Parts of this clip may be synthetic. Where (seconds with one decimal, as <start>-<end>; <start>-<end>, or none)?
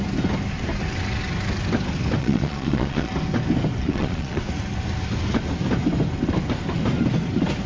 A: 2.2-3.1; 3.8-4.4